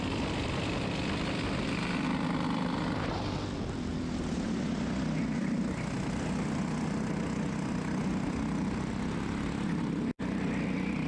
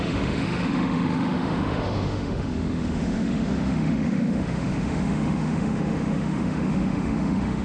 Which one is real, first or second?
first